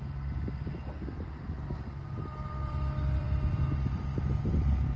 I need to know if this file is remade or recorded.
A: remade